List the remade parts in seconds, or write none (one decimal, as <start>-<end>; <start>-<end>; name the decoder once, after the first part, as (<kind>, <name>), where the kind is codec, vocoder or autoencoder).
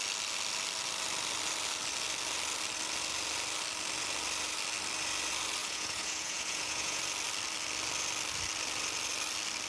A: 5.6-7.0 (vocoder, Vocos)